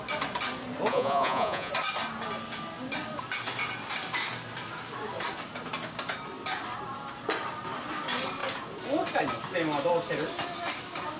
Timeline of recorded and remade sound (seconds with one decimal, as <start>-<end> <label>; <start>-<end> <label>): 0.0-0.9 recorded; 0.9-1.7 remade; 1.7-11.2 recorded

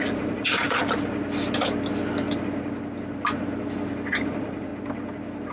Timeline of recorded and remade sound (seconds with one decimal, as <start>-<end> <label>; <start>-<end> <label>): 0.0-0.8 remade; 0.8-4.1 recorded; 4.1-4.7 remade; 4.7-5.5 recorded

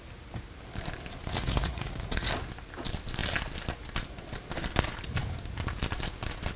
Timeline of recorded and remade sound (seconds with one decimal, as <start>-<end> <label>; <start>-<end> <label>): 0.0-1.4 recorded; 1.4-2.3 remade; 2.3-6.6 recorded

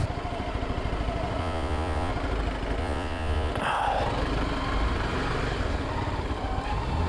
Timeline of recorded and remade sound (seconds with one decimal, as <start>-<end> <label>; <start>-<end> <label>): 0.0-1.4 recorded; 1.4-2.1 remade; 2.1-2.8 recorded; 2.8-3.5 remade; 3.5-7.1 recorded